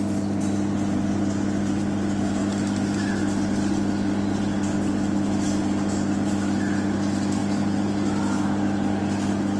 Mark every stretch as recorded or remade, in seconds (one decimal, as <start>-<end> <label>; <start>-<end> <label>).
0.0-9.6 recorded